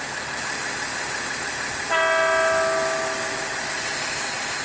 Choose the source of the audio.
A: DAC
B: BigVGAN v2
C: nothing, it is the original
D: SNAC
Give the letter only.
C